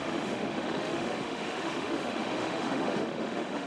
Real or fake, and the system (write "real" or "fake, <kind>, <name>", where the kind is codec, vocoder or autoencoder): fake, autoencoder, DAC-VAE